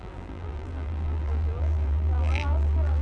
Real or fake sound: fake